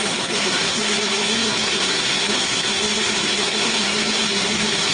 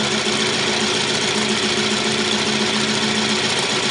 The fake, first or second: first